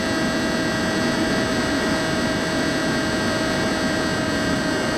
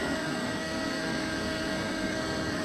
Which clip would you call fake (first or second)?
second